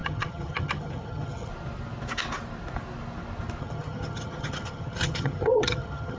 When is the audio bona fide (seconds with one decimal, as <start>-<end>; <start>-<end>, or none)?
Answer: 1.5-3.6